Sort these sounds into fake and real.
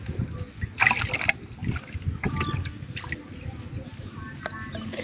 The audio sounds real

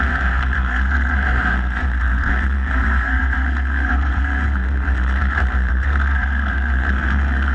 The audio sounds fake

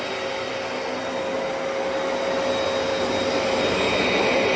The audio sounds real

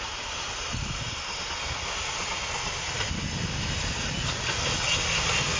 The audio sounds real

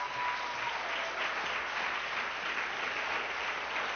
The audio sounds real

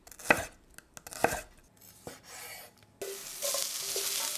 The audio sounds real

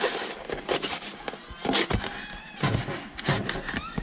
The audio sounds real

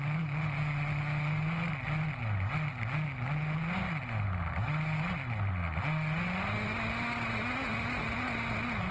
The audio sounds real